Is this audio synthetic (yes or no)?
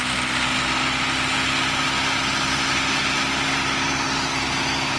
no